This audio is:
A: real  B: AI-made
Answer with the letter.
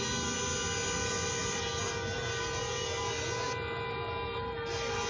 A